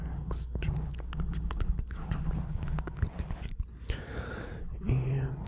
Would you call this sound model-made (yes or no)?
no